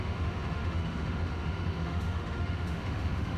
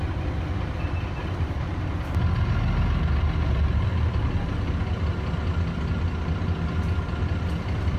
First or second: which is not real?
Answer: first